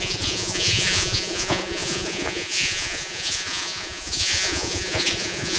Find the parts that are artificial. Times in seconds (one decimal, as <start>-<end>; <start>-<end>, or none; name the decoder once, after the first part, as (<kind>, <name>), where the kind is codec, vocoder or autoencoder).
0.0-5.6 (vocoder, Vocos)